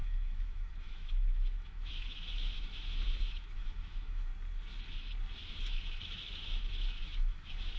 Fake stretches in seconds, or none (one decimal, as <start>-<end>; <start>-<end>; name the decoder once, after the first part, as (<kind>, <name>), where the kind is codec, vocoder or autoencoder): 0.0-4.3 (autoencoder, DAC-VAE); 5.5-7.8